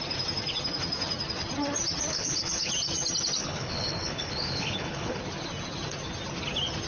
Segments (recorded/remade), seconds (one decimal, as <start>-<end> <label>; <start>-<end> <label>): 0.0-2.1 recorded; 2.1-2.7 remade; 2.7-3.4 recorded; 3.4-5.2 remade; 5.2-6.9 recorded